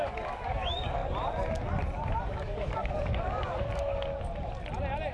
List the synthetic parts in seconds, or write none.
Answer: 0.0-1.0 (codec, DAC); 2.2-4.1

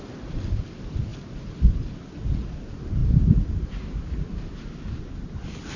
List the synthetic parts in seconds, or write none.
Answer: none

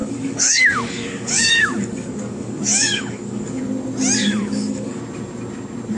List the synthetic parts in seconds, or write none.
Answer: 0.0-3.6 (codec, DAC); 4.2-5.0

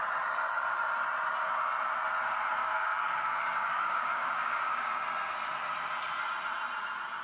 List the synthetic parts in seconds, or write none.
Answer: 2.6-4.9 (codec, DAC)

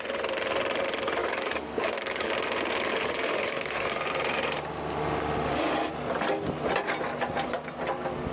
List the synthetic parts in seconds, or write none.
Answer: 1.2-2.3 (codec, DAC); 2.9-3.9

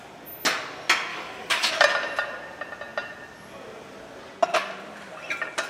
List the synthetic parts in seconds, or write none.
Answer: 1.1-1.7 (codec, DAC)

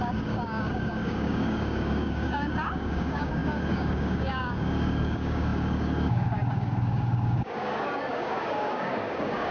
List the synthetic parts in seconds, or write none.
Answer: 0.0-9.5 (codec, DAC)